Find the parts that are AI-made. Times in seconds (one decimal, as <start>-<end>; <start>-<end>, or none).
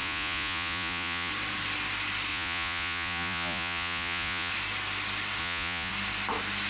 0.0-1.3; 2.3-4.5; 5.4-5.9